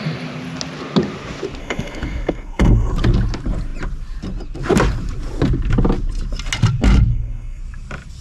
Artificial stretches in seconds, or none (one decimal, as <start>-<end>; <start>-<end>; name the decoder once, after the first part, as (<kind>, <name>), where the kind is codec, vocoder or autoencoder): 1.6-2.9 (codec, SNAC); 7.1-7.6